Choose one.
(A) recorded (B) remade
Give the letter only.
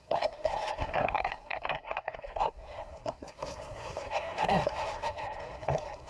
B